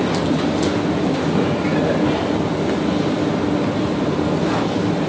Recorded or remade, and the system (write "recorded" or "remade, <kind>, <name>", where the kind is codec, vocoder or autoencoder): recorded